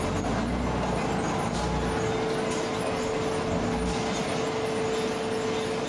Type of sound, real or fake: real